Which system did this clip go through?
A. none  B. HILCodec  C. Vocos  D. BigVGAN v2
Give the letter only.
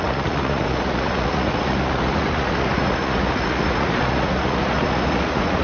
C